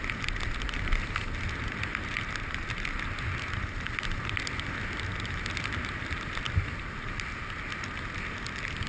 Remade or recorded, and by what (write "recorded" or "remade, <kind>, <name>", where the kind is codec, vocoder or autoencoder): recorded